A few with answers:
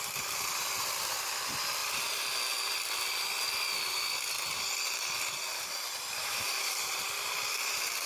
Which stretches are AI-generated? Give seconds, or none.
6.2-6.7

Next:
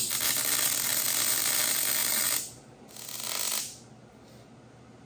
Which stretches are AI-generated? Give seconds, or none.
none

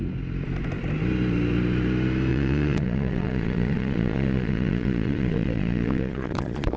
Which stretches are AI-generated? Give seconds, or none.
2.3-6.8

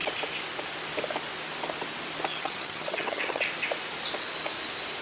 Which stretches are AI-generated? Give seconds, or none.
2.3-3.4

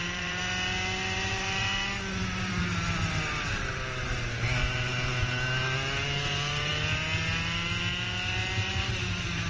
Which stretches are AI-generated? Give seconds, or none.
0.0-0.4; 1.3-5.1; 6.0-6.7

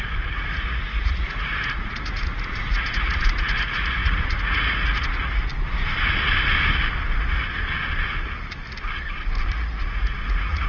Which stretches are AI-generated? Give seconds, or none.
0.0-5.5; 9.5-10.7